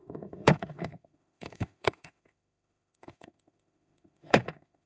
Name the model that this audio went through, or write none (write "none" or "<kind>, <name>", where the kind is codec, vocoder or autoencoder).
autoencoder, DAC-VAE